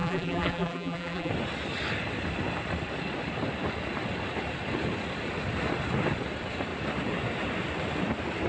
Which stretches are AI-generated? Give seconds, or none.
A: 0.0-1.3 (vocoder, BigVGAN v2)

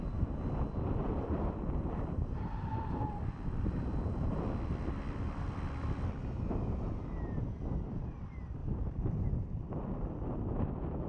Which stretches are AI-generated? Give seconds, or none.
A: 0.0-8.6 (vocoder, BigVGAN v2); 9.8-11.1

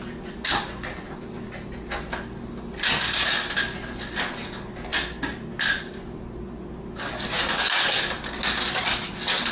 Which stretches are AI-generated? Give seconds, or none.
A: none